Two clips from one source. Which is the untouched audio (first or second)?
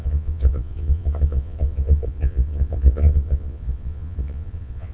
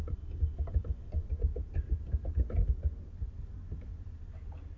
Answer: second